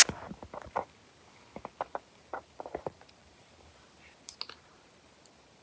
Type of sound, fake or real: real